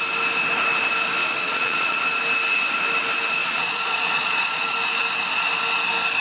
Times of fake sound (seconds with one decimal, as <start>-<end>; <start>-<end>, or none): 1.2-2.0; 3.4-4.6